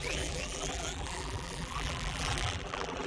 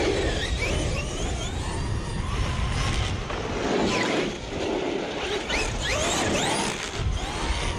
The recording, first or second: second